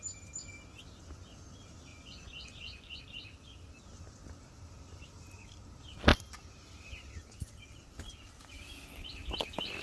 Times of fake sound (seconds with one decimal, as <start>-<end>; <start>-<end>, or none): 1.9-3.0